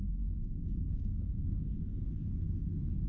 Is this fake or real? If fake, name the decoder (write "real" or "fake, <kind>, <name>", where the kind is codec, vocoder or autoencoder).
fake, codec, SNAC